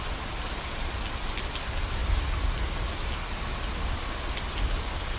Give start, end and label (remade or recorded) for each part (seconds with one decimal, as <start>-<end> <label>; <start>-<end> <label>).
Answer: 0.0-5.2 recorded